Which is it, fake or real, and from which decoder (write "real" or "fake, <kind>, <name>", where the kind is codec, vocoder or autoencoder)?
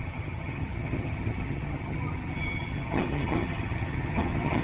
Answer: fake, vocoder, HiFi-GAN